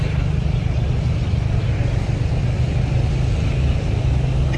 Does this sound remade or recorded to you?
recorded